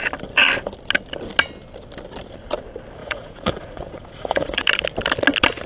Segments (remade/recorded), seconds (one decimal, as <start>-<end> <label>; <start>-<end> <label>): 0.0-3.0 recorded; 3.0-4.6 remade; 4.6-5.7 recorded